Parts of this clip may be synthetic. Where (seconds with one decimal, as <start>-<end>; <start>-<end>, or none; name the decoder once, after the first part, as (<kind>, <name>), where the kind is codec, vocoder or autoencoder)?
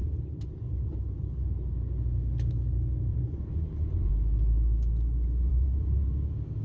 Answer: 0.0-1.7 (vocoder, BigVGAN v2); 3.1-4.1; 5.5-6.6